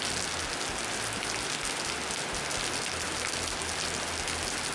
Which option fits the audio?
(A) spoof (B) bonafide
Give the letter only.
B